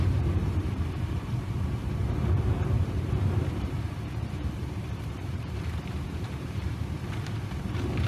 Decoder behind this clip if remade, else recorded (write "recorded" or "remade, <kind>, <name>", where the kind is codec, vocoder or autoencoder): remade, vocoder, BigVGAN v2